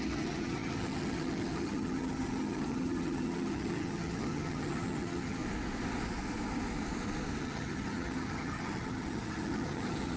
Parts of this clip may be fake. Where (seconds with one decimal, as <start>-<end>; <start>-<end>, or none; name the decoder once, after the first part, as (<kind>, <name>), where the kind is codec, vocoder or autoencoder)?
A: 0.0-5.4 (vocoder, HiFi-GAN); 7.4-10.2